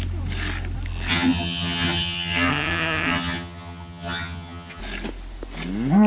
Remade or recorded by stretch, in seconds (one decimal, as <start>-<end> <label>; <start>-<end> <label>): 0.0-1.1 recorded; 1.1-4.8 remade; 4.8-6.1 recorded